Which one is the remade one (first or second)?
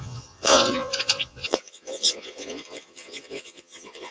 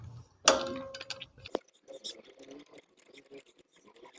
first